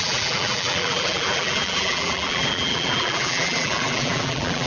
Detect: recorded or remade remade